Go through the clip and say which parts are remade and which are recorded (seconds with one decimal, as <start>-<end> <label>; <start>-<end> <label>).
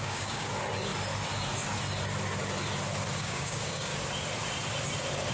0.0-0.5 remade; 0.5-3.2 recorded; 3.2-3.9 remade; 3.9-5.3 recorded